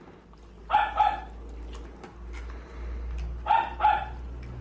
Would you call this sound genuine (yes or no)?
yes